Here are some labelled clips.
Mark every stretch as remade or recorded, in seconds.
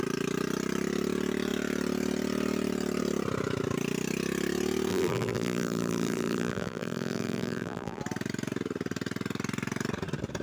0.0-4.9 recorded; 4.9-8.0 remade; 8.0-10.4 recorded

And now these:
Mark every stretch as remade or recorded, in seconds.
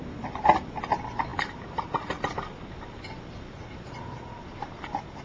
0.0-5.2 recorded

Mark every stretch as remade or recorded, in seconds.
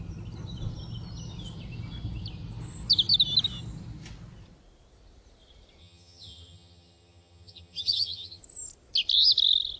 0.0-5.8 recorded; 5.8-8.4 remade; 8.4-9.8 recorded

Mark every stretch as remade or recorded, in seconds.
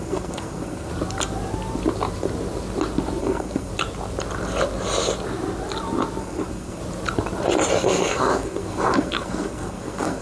0.0-0.9 remade; 0.9-3.2 recorded; 3.2-3.7 remade; 3.7-6.2 recorded; 6.2-6.8 remade; 6.8-7.8 recorded; 7.8-10.2 remade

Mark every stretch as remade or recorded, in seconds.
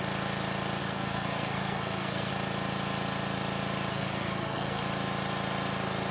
0.0-0.8 recorded; 0.8-2.3 remade; 2.3-3.9 recorded; 3.9-4.8 remade; 4.8-6.1 recorded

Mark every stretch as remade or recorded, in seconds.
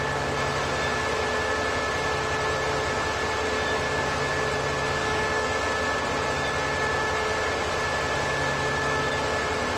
0.0-5.0 recorded; 5.0-5.6 remade; 5.6-9.8 recorded